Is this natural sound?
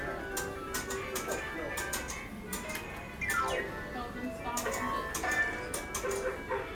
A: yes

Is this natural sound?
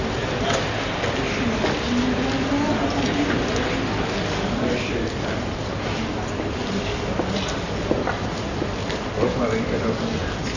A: yes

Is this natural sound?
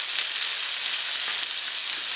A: yes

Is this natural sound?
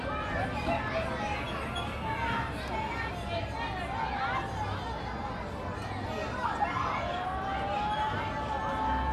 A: yes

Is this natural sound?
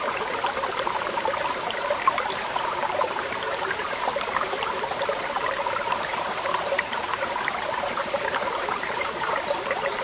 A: no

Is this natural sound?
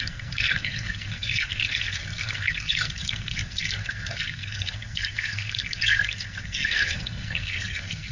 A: no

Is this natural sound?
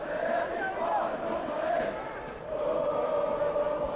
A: yes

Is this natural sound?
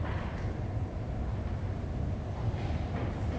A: yes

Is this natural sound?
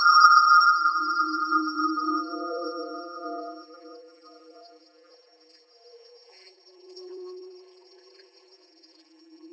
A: no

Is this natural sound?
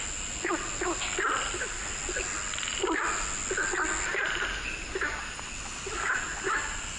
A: yes